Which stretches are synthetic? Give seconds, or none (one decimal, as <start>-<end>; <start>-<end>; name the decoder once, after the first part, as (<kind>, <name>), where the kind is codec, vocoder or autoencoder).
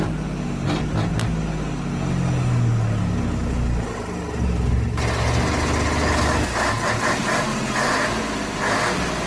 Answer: none